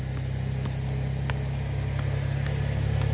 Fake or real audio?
real